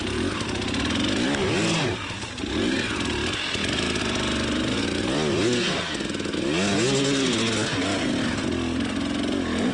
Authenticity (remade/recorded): recorded